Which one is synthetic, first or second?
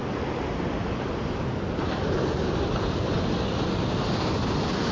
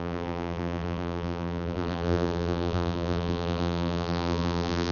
second